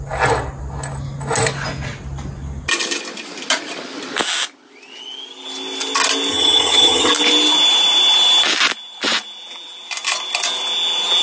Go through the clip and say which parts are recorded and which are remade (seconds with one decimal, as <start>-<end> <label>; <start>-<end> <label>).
0.0-6.3 recorded; 6.3-7.1 remade; 7.1-11.2 recorded